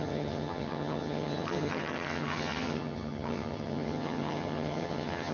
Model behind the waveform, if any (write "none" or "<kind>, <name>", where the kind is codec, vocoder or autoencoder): vocoder, HiFi-GAN